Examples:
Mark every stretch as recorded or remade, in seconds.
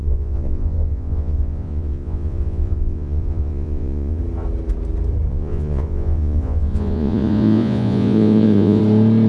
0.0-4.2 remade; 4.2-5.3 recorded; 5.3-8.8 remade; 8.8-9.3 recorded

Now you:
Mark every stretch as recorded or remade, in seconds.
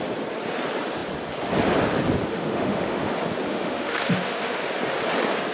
0.0-2.3 recorded; 2.3-3.1 remade; 3.1-3.5 recorded; 3.5-4.7 remade; 4.7-5.5 recorded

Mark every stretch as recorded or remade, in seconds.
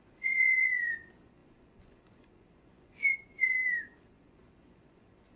0.0-5.4 remade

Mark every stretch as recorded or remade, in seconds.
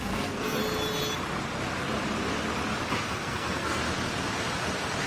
0.0-0.6 remade; 0.6-2.9 recorded; 2.9-3.8 remade; 3.8-5.1 recorded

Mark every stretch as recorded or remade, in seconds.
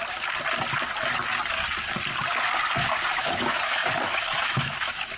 0.0-3.1 recorded; 3.1-5.2 remade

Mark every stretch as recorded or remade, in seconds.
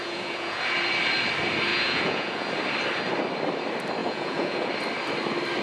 0.0-0.6 remade; 0.6-1.7 recorded; 1.7-2.5 remade; 2.5-4.0 recorded; 4.0-4.7 remade; 4.7-5.6 recorded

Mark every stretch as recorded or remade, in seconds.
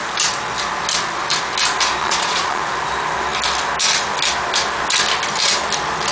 0.0-2.0 recorded; 2.0-2.6 remade; 2.6-6.1 recorded